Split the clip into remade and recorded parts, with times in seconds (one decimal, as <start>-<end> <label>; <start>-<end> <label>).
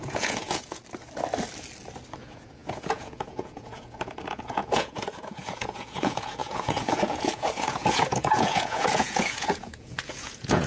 0.0-0.8 remade; 0.8-2.2 recorded; 2.2-10.7 remade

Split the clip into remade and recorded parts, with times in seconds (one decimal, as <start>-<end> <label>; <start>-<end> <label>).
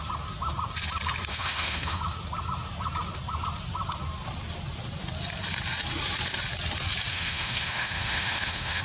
0.0-1.3 recorded; 1.3-2.0 remade; 2.0-7.1 recorded; 7.1-8.8 remade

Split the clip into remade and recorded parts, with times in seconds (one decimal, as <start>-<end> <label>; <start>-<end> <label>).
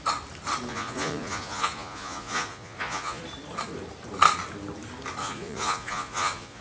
0.0-0.7 recorded; 0.7-3.2 remade; 3.2-5.2 recorded; 5.2-6.6 remade